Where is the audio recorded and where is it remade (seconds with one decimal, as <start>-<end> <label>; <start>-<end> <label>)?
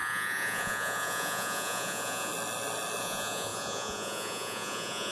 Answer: 0.0-2.3 remade; 2.3-3.0 recorded; 3.0-5.1 remade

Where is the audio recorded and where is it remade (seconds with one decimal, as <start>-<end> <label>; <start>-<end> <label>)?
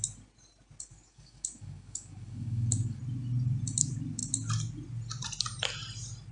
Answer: 0.0-0.9 recorded; 0.9-3.0 remade; 3.0-6.3 recorded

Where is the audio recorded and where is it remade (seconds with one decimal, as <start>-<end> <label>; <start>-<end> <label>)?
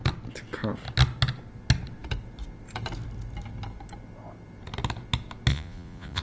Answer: 0.0-5.5 recorded; 5.5-6.2 remade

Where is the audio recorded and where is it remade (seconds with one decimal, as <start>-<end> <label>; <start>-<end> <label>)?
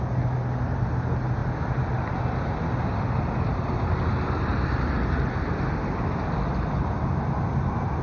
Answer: 0.0-8.0 recorded